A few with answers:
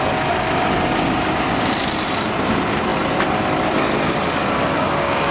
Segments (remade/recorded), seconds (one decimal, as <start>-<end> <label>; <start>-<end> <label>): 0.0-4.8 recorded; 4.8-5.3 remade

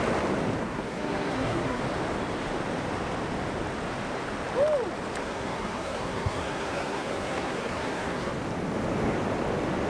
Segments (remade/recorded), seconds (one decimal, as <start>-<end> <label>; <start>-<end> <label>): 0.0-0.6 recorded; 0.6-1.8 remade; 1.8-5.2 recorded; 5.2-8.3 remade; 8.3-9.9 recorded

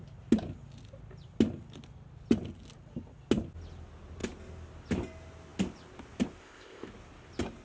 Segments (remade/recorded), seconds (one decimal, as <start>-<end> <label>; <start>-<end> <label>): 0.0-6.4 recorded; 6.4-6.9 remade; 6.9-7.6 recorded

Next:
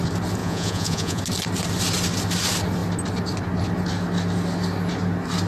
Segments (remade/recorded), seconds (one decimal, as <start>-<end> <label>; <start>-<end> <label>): 0.0-0.4 recorded; 0.4-1.2 remade; 1.2-5.5 recorded

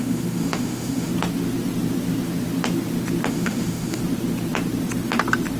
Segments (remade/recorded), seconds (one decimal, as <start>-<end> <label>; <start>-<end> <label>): 0.0-1.1 remade; 1.1-3.3 recorded; 3.3-4.0 remade; 4.0-5.6 recorded